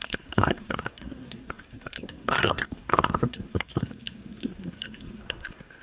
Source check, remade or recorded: remade